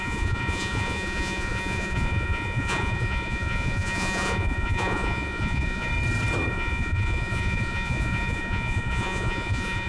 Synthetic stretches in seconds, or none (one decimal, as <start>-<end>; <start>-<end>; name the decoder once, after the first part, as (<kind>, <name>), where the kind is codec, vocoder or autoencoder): 0.0-5.9 (vocoder, Vocos); 6.5-9.9